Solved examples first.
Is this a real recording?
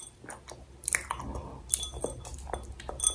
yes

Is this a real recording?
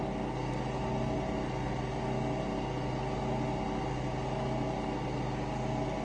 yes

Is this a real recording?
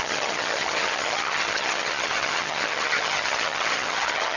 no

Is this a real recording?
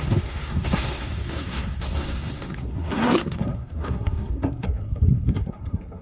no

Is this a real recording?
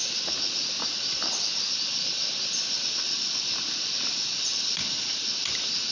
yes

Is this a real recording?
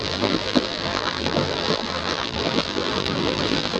no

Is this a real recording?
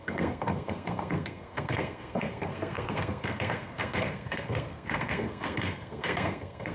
no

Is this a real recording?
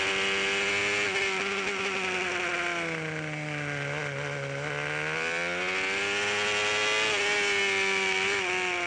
yes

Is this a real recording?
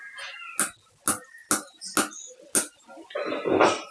yes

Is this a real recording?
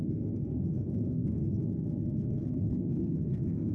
no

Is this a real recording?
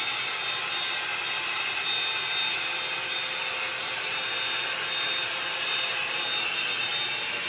yes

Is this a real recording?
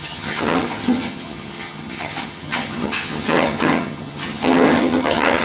no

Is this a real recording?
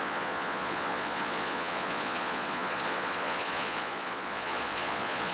no